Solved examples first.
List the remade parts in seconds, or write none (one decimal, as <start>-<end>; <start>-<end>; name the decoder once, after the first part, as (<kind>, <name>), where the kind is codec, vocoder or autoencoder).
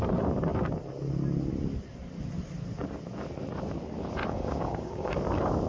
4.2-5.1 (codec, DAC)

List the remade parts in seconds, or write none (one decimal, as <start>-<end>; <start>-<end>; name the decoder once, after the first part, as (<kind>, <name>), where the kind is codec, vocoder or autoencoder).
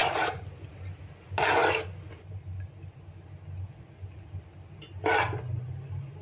none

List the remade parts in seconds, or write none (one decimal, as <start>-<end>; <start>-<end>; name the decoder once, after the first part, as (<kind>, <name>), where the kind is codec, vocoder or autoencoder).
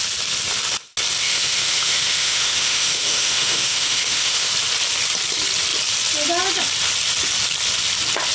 1.2-4.5 (autoencoder, DAC-VAE)